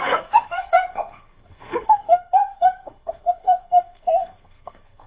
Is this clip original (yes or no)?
no